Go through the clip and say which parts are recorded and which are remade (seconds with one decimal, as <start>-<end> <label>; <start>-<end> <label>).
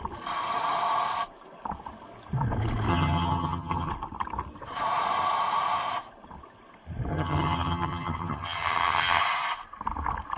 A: 0.0-2.9 recorded; 2.9-3.9 remade; 3.9-7.1 recorded; 7.1-9.2 remade; 9.2-10.4 recorded